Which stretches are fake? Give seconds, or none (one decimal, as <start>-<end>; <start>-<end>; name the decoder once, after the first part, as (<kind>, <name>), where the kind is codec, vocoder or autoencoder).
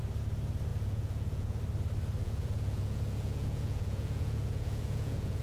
0.7-1.6 (vocoder, Vocos); 2.2-5.4